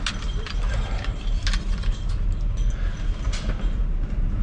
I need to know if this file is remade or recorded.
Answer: recorded